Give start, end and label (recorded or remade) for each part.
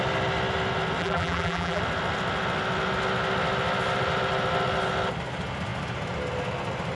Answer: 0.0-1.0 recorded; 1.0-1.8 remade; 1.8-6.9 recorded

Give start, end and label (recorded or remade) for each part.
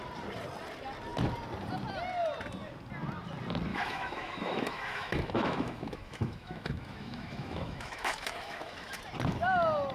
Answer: 0.0-3.7 recorded; 3.7-9.0 remade; 9.0-9.9 recorded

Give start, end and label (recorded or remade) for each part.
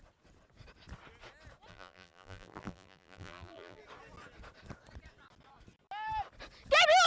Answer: 0.0-1.7 recorded; 1.7-3.8 remade; 3.8-7.1 recorded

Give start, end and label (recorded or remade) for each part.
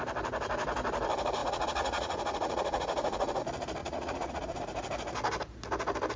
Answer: 0.0-1.4 recorded; 1.4-3.4 remade; 3.4-3.8 recorded; 3.8-4.6 remade; 4.6-6.2 recorded